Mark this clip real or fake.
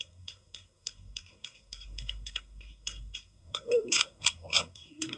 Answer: fake